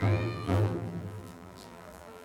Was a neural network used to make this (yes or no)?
yes